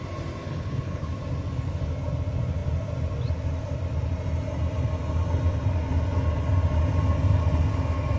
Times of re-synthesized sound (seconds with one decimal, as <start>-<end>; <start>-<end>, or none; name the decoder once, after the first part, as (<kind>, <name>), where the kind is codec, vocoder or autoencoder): 0.4-1.1 (codec, HILCodec)